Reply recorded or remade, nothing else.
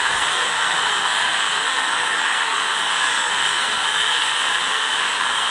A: remade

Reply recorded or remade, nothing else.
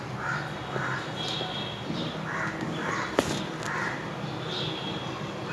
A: recorded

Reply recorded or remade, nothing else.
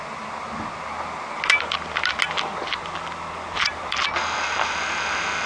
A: recorded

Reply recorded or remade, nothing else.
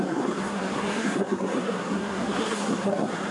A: remade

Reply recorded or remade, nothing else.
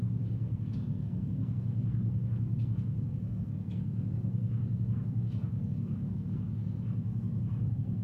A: remade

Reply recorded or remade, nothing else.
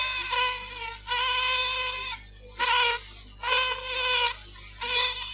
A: recorded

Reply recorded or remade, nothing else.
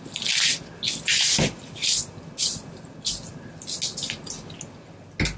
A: recorded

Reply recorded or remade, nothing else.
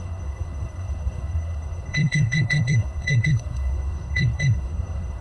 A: remade